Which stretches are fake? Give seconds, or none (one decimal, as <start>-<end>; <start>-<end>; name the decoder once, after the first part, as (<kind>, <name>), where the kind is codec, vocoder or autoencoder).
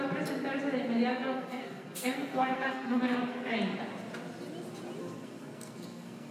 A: 1.1-3.5 (codec, SNAC); 5.0-6.3